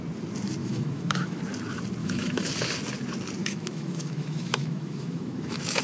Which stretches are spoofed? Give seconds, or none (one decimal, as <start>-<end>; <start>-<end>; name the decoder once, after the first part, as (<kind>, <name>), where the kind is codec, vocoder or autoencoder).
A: 0.6-1.4 (autoencoder, DAC-VAE); 2.0-2.5; 3.4-5.8